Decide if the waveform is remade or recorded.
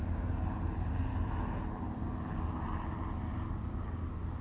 recorded